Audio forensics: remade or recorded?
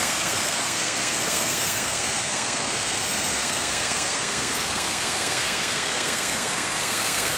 remade